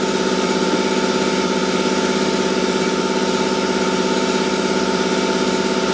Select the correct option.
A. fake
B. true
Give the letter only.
B